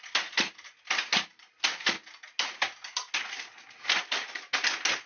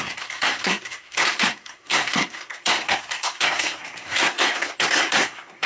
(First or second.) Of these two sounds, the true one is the first